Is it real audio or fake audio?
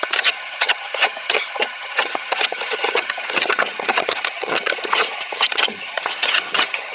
fake